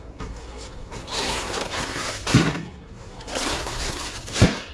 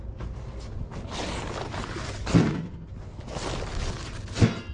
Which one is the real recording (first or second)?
second